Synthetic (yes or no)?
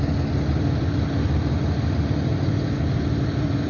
no